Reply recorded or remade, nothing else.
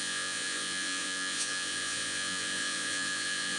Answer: remade